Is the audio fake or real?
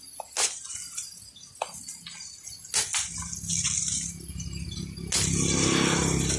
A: real